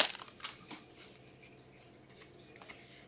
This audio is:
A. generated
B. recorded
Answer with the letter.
B